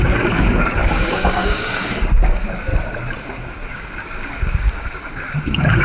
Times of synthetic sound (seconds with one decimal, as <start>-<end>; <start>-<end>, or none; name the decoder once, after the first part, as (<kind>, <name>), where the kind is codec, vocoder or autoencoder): 0.0-2.7 (codec, DAC); 3.2-5.8